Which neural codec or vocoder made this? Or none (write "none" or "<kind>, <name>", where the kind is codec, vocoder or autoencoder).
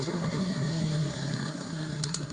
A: codec, SNAC